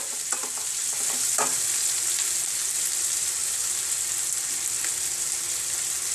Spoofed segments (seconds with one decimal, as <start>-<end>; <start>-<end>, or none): none